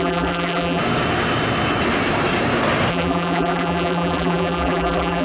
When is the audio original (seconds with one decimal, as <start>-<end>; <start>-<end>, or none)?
0.8-2.9